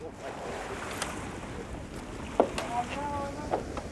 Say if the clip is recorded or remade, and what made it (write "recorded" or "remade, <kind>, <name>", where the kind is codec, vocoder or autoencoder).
recorded